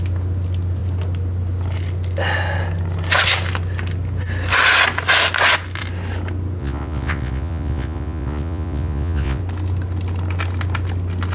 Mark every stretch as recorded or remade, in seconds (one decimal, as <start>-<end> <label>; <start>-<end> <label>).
0.0-6.6 recorded; 6.6-9.4 remade; 9.4-11.3 recorded